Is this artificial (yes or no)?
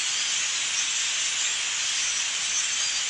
no